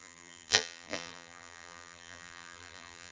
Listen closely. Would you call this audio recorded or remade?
remade